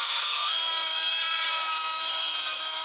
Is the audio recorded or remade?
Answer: remade